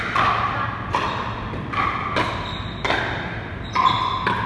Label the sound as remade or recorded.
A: recorded